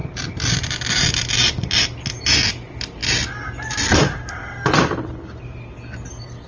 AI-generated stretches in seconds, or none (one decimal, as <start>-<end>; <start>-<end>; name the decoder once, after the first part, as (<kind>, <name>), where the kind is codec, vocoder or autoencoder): none